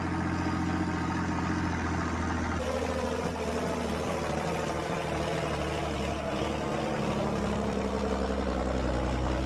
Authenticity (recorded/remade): recorded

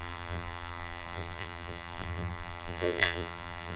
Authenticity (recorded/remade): remade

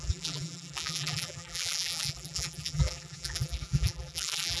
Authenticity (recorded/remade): remade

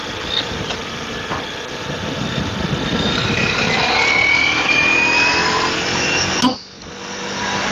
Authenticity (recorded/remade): recorded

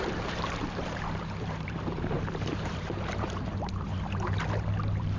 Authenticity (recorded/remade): remade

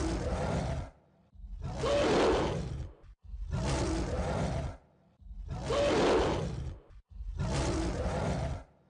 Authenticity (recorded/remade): recorded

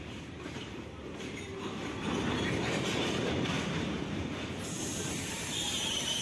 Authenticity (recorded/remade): remade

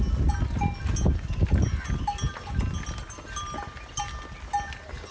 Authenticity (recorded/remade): recorded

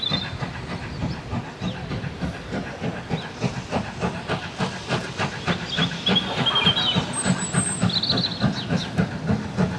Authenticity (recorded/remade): recorded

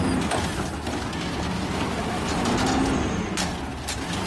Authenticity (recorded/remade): recorded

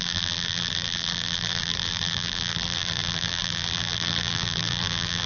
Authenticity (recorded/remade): remade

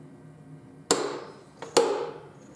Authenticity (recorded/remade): recorded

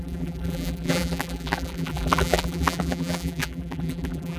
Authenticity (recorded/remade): remade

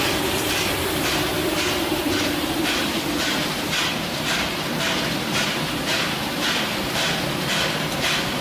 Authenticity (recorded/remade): remade